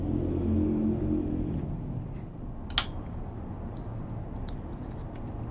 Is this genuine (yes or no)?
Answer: yes